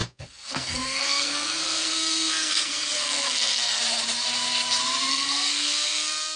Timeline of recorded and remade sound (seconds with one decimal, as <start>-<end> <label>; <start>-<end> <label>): 0.0-3.8 remade; 3.8-5.1 recorded; 5.1-6.4 remade